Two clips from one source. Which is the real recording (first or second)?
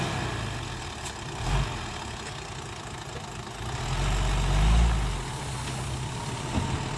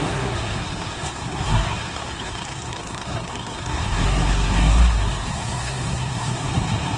first